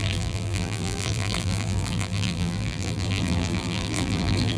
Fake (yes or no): yes